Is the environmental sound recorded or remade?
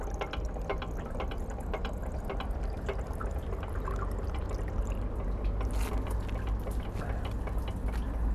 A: recorded